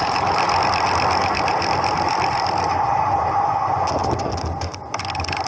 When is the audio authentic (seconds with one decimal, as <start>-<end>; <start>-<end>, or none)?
0.0-5.5